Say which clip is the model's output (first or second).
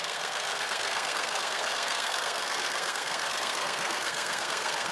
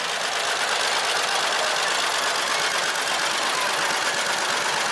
first